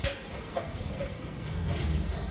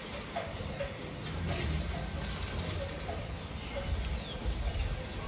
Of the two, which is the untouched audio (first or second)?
second